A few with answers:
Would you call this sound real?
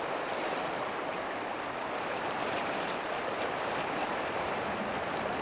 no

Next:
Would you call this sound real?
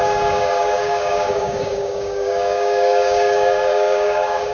no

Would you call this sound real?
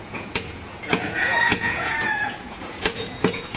no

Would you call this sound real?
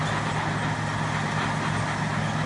yes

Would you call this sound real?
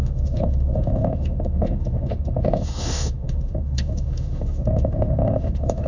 no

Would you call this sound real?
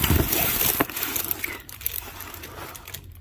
no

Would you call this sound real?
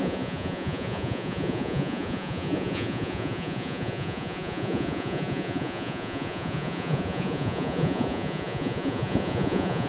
no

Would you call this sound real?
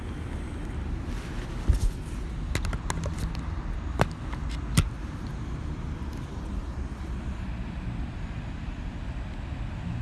yes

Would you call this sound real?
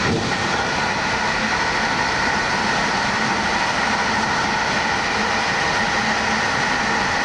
yes